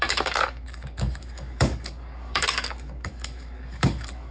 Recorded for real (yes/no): no